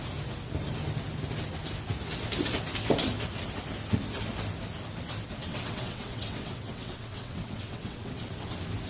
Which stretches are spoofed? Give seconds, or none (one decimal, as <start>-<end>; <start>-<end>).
5.4-8.5